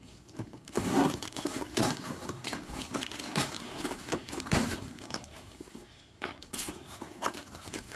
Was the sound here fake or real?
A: fake